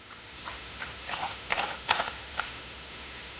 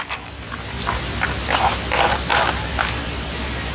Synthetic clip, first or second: first